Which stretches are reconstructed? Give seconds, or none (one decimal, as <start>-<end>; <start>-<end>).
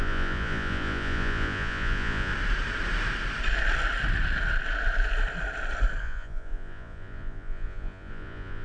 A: 0.0-2.3; 6.0-8.6